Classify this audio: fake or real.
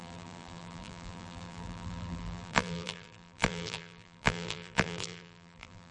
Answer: fake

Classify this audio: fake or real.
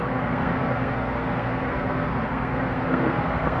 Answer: fake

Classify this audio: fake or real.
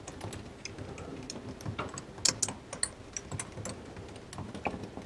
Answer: real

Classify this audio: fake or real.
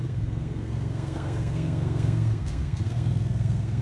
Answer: fake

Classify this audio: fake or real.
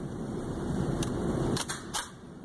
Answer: fake